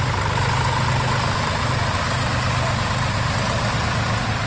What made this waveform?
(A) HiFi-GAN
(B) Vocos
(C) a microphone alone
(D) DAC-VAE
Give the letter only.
C